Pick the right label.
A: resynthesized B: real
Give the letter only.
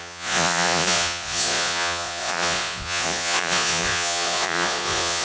A